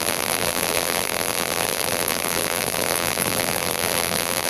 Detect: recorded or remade remade